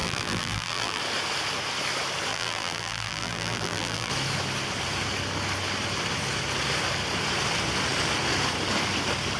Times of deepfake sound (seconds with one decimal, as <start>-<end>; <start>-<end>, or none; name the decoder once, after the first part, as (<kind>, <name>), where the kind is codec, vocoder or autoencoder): 0.0-1.0 (vocoder, BigVGAN v2); 2.3-4.1